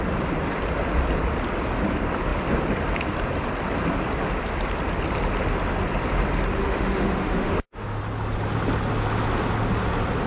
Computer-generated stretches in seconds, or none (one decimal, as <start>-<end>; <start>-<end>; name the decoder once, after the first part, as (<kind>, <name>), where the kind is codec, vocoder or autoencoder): 6.6-8.0 (autoencoder, DAC-VAE)